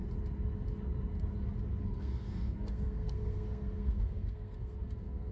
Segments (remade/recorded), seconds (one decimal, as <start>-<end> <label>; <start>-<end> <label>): 0.0-1.8 recorded; 1.8-5.3 remade